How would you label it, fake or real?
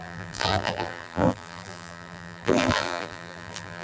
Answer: fake